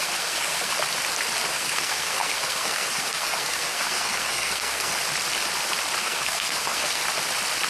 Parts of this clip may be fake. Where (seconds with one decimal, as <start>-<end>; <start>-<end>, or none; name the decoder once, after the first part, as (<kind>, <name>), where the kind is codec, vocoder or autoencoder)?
0.0-0.7 (codec, SNAC); 1.5-4.9; 6.0-7.0